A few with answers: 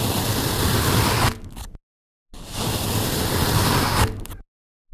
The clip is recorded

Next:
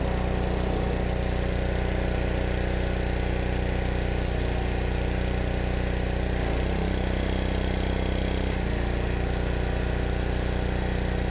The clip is recorded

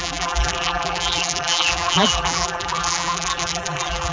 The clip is remade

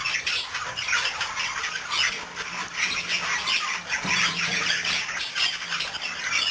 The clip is recorded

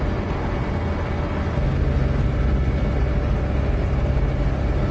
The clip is recorded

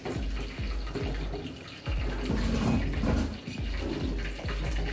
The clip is recorded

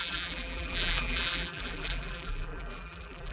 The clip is remade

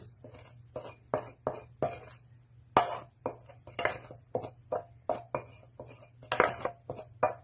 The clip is recorded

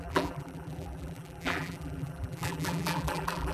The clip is remade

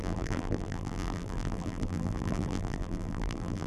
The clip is remade